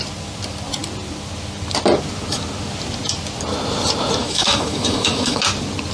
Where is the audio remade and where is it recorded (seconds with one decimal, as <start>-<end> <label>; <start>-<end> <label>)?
0.0-4.2 recorded; 4.2-5.4 remade; 5.4-5.9 recorded